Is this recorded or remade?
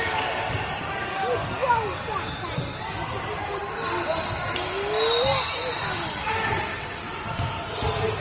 recorded